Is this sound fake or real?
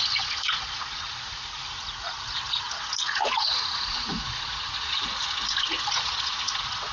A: fake